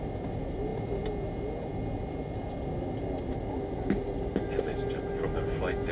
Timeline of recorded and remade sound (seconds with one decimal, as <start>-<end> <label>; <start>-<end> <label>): 0.0-5.9 recorded